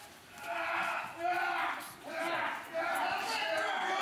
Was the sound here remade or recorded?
recorded